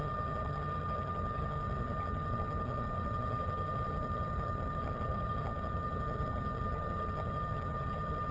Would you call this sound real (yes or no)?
no